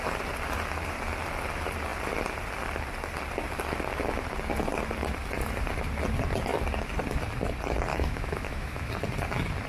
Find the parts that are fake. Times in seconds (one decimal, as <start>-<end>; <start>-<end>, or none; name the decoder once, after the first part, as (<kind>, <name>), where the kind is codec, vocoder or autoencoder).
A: 7.9-8.9 (autoencoder, DAC-VAE)